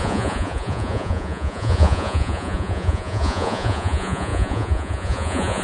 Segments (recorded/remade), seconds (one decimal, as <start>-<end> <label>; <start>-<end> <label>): 0.0-5.6 remade